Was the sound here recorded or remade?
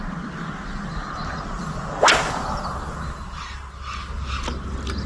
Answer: recorded